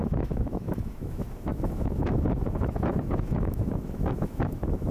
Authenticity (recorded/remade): remade